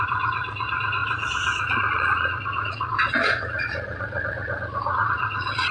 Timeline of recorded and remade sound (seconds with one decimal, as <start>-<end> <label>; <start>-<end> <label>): 0.0-5.7 remade